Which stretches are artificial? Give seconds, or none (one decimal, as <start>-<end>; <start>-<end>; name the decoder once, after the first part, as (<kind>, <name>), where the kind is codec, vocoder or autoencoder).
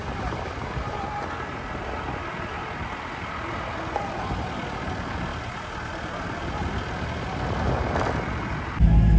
none